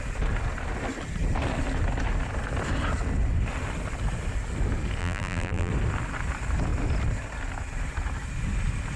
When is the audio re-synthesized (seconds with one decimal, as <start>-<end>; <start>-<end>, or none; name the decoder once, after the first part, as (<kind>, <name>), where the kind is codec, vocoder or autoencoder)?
5.0-5.7 (vocoder, BigVGAN v2)